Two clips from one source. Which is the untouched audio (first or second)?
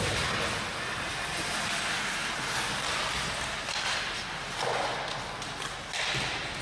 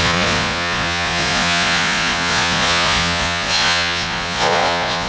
first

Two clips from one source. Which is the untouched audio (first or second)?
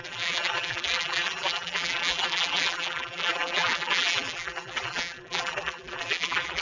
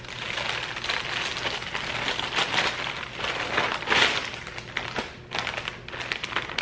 second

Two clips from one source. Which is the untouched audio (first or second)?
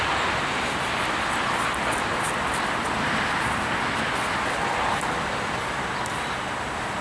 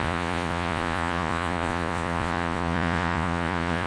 first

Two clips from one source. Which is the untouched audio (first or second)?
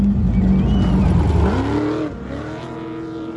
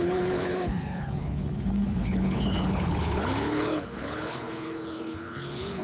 first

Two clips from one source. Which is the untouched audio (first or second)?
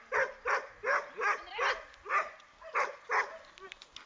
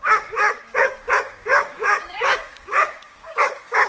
first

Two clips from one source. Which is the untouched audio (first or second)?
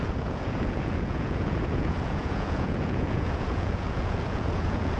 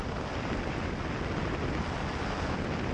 second